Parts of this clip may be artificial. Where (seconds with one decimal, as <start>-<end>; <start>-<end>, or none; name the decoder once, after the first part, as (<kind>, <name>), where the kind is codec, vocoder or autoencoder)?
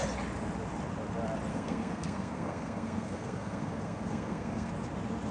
1.5-4.7 (codec, SNAC)